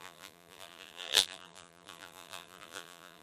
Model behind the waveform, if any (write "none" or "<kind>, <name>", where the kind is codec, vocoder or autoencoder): vocoder, BigVGAN v2